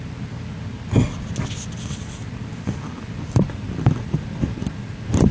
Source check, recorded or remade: recorded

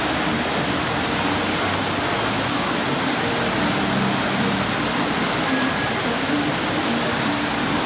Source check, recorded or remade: recorded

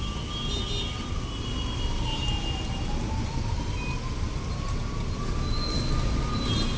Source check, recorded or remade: recorded